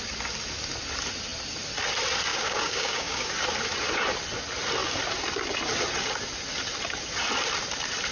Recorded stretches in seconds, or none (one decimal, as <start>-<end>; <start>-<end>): 0.0-2.3; 3.3-8.1